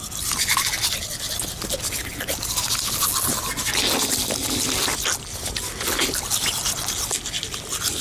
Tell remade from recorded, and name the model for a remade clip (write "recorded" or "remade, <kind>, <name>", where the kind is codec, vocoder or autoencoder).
recorded